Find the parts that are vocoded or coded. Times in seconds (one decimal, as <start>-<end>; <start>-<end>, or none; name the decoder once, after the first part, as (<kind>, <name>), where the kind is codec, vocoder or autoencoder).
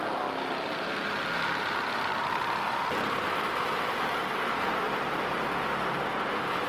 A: 2.1-3.5 (vocoder, BigVGAN v2)